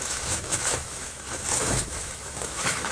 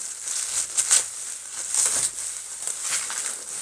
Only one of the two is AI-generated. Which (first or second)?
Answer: first